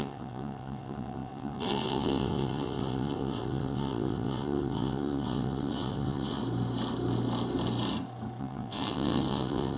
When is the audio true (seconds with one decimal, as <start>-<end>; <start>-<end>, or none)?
6.4-8.4